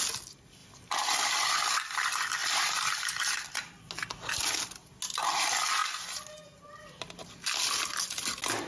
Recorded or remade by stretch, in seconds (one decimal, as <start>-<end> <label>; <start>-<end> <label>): 0.0-0.6 recorded; 0.6-1.4 remade; 1.4-2.4 recorded; 2.4-3.7 remade; 3.7-8.7 recorded